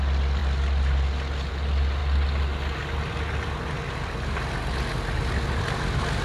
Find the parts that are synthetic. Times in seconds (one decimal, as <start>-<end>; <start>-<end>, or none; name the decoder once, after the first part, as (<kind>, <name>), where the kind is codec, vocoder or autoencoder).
none